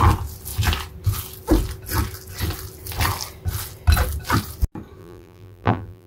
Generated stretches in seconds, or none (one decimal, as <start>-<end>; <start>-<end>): 5.0-6.1